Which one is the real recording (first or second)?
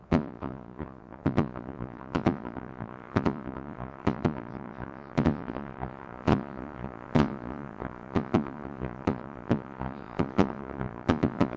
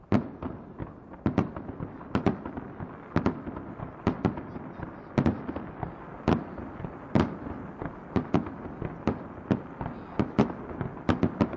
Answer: second